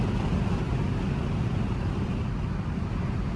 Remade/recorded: recorded